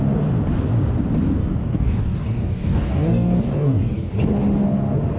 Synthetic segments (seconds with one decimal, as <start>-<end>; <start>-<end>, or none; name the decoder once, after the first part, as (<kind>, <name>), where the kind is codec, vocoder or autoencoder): 1.4-4.1 (codec, DAC)